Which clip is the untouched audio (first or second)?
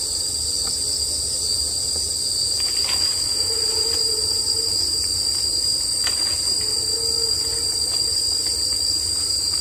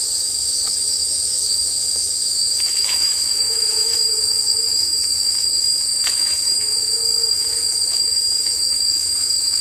first